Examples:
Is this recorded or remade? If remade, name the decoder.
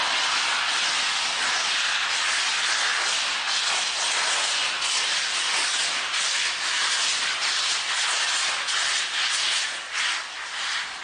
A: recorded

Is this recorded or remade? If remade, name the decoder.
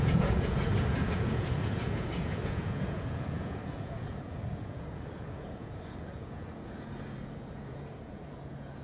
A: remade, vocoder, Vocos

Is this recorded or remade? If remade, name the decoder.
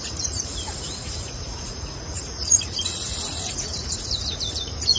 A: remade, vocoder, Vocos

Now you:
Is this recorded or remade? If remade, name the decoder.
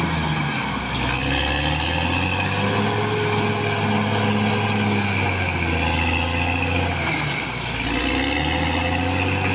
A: recorded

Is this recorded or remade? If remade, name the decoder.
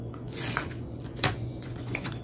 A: remade, vocoder, Vocos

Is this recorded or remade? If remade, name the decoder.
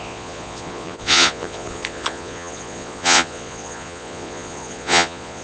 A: remade, vocoder, Vocos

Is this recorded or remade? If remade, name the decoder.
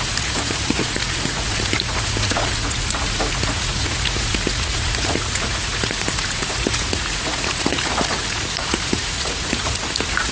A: remade, vocoder, Vocos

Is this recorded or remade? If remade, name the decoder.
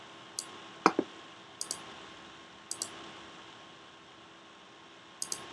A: recorded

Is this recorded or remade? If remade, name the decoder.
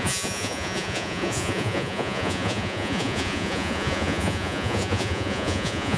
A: remade, vocoder, Vocos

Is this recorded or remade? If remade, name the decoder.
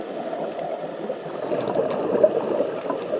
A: recorded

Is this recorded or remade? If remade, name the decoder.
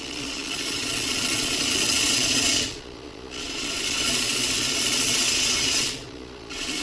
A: remade, vocoder, Vocos